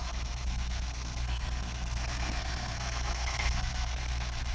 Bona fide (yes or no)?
no